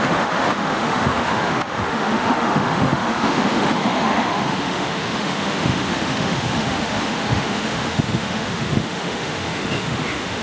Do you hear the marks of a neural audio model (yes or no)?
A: yes